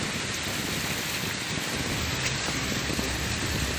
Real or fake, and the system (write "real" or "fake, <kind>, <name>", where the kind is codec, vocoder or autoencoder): real